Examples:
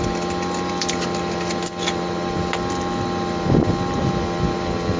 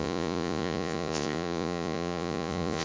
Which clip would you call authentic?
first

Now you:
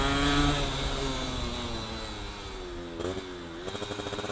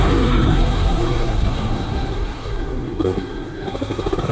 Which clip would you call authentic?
first